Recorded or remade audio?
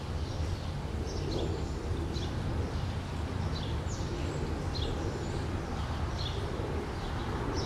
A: recorded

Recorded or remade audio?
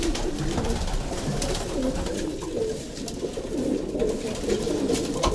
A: recorded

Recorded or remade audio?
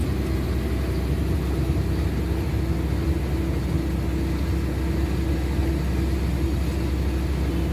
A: recorded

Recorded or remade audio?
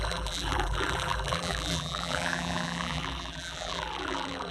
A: remade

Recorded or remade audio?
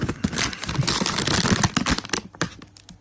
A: recorded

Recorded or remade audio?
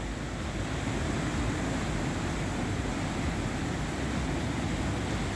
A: recorded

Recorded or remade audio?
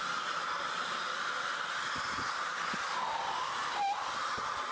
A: recorded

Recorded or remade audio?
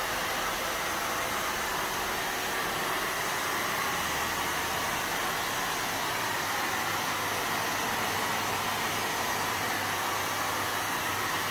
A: recorded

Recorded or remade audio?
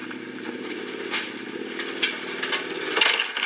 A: recorded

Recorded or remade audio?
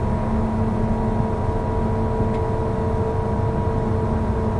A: recorded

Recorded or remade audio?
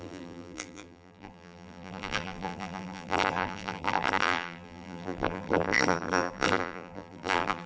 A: remade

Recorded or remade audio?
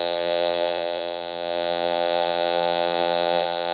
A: remade